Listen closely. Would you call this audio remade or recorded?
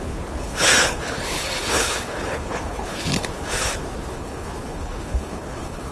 remade